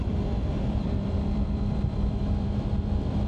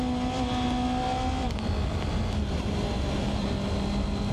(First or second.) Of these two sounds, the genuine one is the second